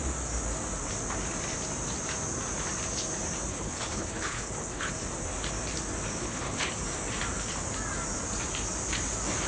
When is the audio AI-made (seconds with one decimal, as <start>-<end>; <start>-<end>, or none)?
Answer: 3.5-4.9; 6.2-6.7

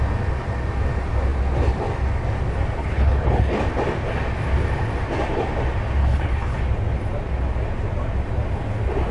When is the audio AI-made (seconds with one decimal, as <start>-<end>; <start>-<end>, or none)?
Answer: 2.8-3.6; 6.0-6.6

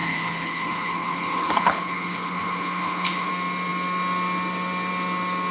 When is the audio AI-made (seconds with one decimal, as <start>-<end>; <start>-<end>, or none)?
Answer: 0.0-3.3

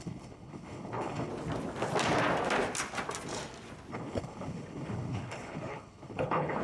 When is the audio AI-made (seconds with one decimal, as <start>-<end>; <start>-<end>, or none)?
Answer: 0.0-1.3; 3.9-6.6

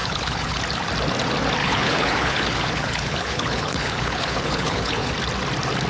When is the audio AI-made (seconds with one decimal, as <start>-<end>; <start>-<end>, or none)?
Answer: 0.0-0.6; 1.6-5.1

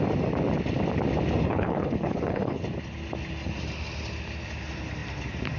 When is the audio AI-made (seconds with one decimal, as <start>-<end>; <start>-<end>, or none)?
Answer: 1.4-2.6

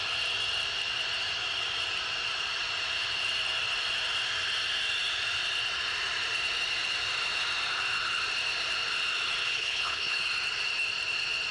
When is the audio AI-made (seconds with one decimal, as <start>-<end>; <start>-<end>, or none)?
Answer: 9.4-10.2